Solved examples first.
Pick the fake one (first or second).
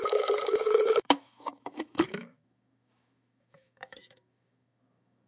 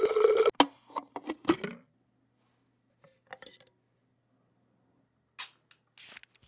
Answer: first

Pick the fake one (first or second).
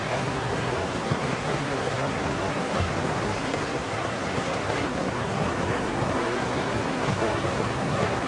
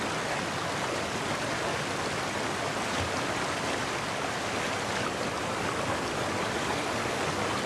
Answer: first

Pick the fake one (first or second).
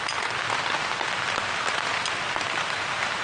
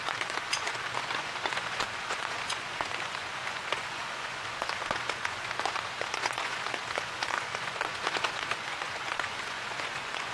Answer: second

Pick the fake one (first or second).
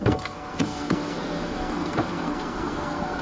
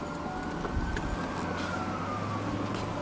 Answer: first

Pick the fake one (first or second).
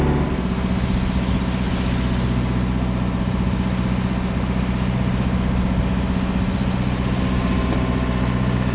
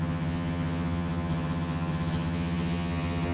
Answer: second